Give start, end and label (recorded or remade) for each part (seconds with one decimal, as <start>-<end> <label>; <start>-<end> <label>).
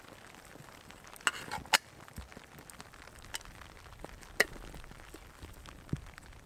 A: 0.0-6.5 recorded